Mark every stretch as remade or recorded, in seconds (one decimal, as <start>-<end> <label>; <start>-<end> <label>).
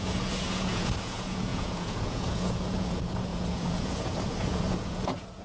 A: 0.0-5.4 remade